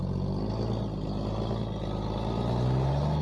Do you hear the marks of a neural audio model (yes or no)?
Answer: no